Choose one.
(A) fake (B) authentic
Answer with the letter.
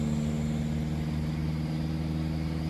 B